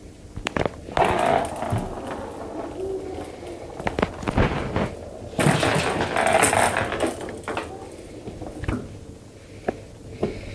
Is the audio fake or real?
real